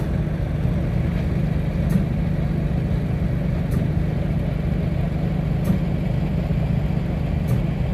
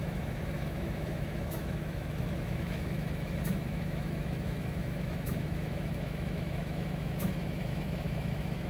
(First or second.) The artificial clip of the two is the second